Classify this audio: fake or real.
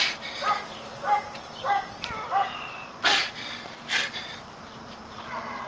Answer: fake